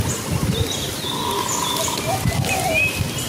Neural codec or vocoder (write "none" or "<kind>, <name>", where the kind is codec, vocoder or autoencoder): none